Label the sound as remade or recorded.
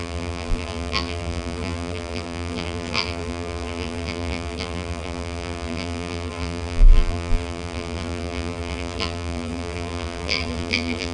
remade